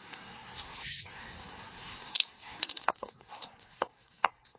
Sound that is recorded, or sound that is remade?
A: remade